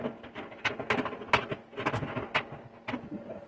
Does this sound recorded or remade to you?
recorded